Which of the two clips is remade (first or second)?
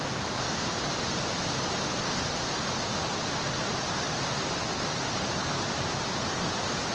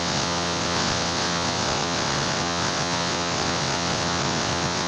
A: second